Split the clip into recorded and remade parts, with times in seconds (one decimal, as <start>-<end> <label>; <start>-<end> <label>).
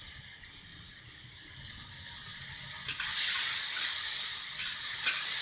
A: 0.0-5.4 recorded